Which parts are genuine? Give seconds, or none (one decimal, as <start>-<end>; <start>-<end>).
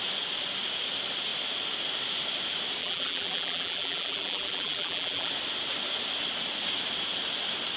0.0-2.8; 5.3-7.8